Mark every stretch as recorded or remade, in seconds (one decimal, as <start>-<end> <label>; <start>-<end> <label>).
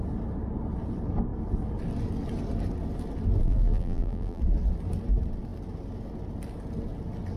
0.0-3.4 recorded; 3.4-4.4 remade; 4.4-7.4 recorded